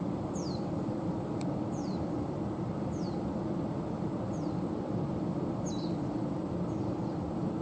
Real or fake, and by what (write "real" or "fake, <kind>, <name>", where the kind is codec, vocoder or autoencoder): fake, vocoder, BigVGAN v2